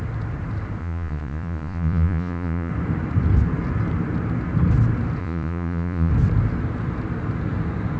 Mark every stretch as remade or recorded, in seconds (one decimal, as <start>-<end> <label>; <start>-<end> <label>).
0.0-0.8 recorded; 0.8-2.7 remade; 2.7-5.2 recorded; 5.2-6.1 remade; 6.1-8.0 recorded